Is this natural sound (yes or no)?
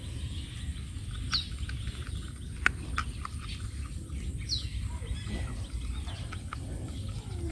yes